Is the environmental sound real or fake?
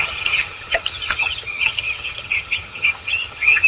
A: fake